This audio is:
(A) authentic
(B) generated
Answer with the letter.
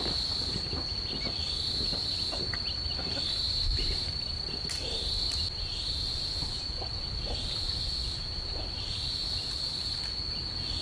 A